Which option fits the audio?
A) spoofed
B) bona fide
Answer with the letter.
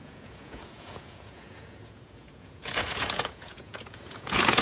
A